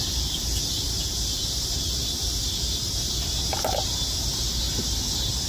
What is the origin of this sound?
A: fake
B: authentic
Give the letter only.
A